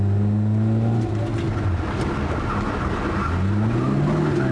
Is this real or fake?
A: real